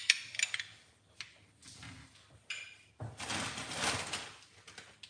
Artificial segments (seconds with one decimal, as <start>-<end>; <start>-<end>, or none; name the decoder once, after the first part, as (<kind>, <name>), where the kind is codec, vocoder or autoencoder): none